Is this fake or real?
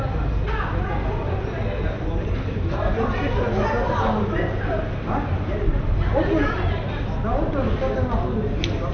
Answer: real